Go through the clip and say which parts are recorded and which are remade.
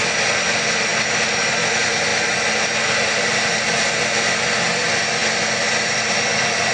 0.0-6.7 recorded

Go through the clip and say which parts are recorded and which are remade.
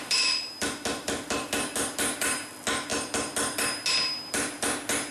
0.0-5.1 recorded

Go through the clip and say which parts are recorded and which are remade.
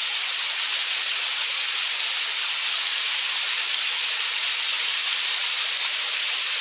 0.0-6.6 recorded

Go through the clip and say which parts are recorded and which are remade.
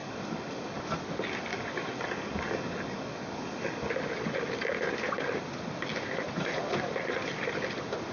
0.0-0.8 remade; 0.8-1.5 recorded; 1.5-3.9 remade; 3.9-8.1 recorded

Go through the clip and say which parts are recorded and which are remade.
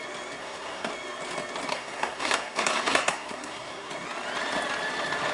0.0-0.4 recorded; 0.4-0.9 remade; 0.9-1.7 recorded; 1.7-3.9 remade; 3.9-5.3 recorded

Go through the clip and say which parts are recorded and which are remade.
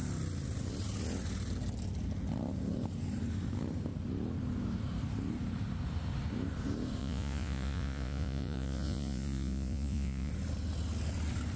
0.0-7.0 recorded; 7.0-10.3 remade; 10.3-11.6 recorded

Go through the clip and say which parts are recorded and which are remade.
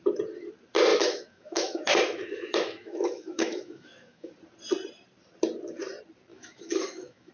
0.0-0.9 recorded; 0.9-4.3 remade; 4.3-6.3 recorded; 6.3-7.3 remade